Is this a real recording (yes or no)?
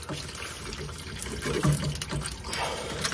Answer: yes